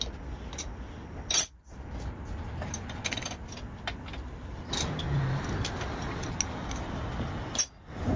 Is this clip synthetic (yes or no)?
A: no